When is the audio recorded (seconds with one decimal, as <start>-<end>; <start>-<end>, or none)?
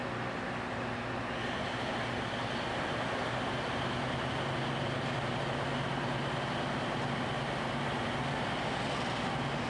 0.0-9.7